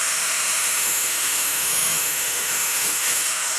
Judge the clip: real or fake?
fake